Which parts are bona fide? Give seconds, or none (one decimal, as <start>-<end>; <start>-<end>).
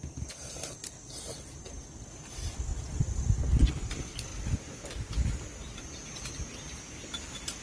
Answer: 0.0-2.7; 3.7-7.6